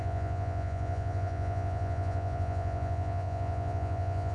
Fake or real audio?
fake